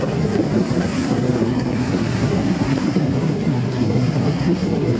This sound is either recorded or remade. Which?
remade